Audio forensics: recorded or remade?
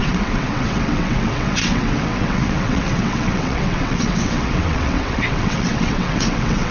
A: remade